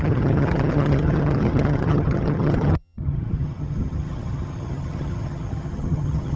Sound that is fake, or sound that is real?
fake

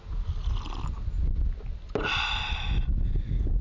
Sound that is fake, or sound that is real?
real